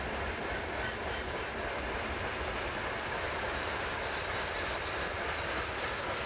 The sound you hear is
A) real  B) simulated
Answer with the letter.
A